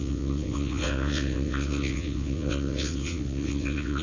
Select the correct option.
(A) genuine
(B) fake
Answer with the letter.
B